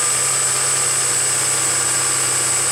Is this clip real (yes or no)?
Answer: yes